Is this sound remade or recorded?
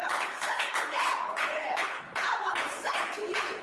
remade